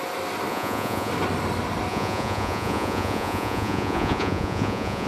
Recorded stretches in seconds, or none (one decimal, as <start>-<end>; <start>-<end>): 0.0-0.5; 1.1-1.9